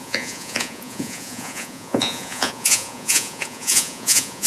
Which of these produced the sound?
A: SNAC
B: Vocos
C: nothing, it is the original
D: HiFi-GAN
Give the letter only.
B